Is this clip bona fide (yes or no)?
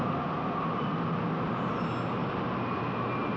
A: yes